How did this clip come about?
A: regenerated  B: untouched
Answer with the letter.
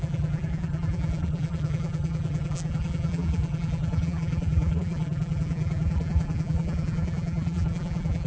A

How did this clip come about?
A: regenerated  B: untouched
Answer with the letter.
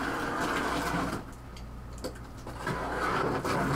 B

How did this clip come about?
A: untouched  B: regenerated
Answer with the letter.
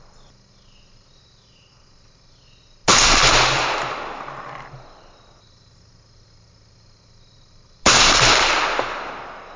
A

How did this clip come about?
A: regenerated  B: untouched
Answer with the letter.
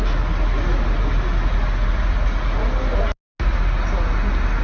B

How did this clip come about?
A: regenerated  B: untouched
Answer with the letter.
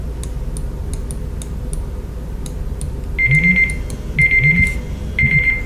B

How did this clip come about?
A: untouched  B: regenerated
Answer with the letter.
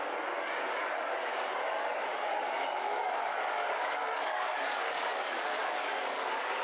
B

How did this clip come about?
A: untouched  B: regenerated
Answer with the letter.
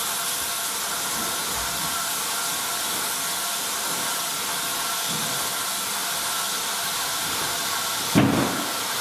A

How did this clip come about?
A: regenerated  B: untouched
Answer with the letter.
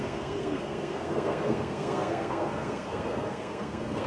A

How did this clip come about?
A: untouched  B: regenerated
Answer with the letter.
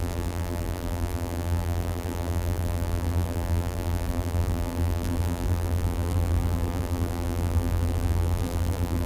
B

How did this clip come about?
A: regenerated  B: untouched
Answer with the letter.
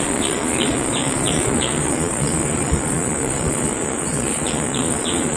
A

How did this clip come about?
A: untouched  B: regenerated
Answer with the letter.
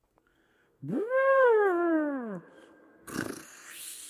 B